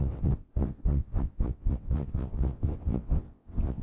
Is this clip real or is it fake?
fake